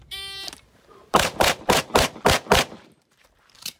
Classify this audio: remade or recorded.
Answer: remade